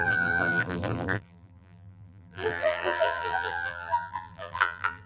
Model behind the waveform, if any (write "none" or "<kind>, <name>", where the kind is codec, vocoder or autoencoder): vocoder, BigVGAN v2